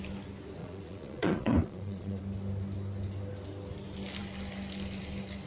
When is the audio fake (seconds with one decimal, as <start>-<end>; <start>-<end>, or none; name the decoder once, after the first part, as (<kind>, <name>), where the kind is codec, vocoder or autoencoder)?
0.6-2.2 (vocoder, Vocos)